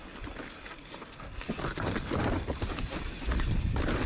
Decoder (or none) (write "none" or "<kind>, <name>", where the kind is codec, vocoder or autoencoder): none